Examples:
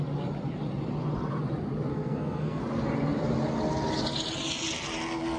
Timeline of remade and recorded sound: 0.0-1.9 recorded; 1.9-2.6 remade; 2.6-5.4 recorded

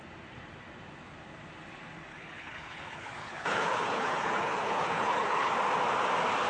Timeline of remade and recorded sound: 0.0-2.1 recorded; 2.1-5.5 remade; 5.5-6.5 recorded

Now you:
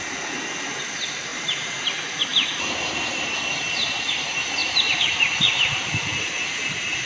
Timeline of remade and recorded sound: 0.0-1.3 recorded; 1.3-1.9 remade; 1.9-2.3 recorded; 2.3-3.6 remade; 3.6-4.6 recorded; 4.6-5.9 remade; 5.9-7.1 recorded

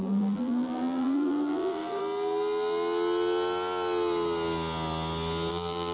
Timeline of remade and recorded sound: 0.0-2.0 remade; 2.0-5.5 recorded; 5.5-5.9 remade